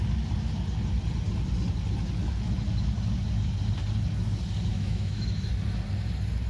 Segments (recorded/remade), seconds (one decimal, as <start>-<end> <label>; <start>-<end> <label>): 0.0-4.7 recorded; 4.7-5.5 remade; 5.5-6.5 recorded